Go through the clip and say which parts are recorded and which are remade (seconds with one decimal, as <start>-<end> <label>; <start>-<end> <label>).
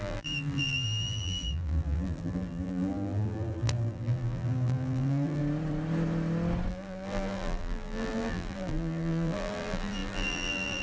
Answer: 0.0-5.4 remade; 5.4-6.7 recorded; 6.7-10.8 remade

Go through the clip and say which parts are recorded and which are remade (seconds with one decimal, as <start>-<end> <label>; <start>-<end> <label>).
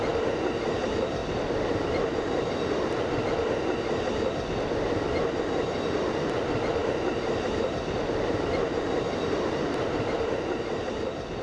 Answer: 0.0-1.2 recorded; 1.2-2.5 remade; 2.5-6.8 recorded; 6.8-10.6 remade; 10.6-11.4 recorded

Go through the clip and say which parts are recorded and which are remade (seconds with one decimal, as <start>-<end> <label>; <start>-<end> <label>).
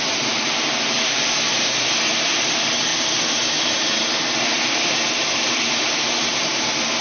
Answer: 0.0-7.0 remade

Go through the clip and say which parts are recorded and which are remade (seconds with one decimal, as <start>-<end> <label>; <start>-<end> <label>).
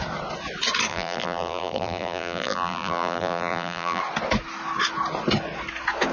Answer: 0.0-0.9 recorded; 0.9-4.0 remade; 4.0-6.1 recorded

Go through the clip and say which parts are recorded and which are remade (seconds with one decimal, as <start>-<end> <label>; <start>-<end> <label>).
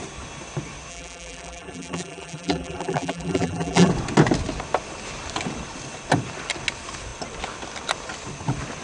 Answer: 0.0-0.9 recorded; 0.9-3.9 remade; 3.9-8.8 recorded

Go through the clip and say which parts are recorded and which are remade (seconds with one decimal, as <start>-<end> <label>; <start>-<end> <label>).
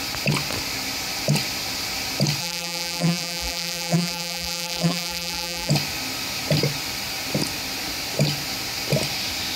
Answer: 0.0-2.4 recorded; 2.4-5.7 remade; 5.7-9.6 recorded